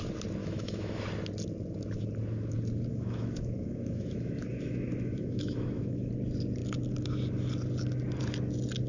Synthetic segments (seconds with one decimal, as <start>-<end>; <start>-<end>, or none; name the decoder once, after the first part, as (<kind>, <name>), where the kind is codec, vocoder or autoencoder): 0.4-1.0 (autoencoder, DAC-VAE); 2.9-6.1